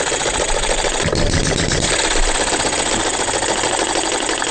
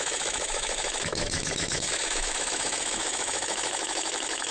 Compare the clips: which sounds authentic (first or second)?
first